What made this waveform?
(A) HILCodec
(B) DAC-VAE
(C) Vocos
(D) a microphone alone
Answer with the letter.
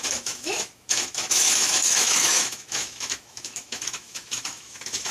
B